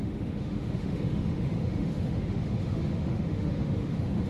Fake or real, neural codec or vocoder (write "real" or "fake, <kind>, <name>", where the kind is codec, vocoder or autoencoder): fake, autoencoder, DAC-VAE